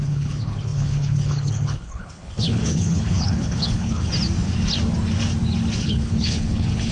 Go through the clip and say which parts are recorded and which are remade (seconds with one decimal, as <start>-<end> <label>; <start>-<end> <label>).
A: 0.0-4.1 remade; 4.1-5.8 recorded; 5.8-6.9 remade